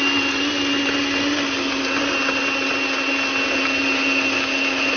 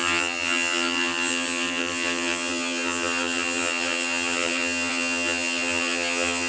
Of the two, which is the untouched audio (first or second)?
first